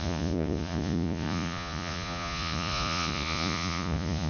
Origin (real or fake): fake